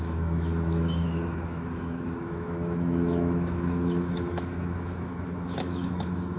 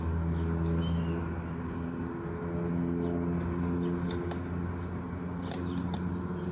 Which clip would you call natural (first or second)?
second